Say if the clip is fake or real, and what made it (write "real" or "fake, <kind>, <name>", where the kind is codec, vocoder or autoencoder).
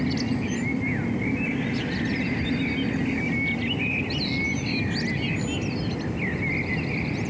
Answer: real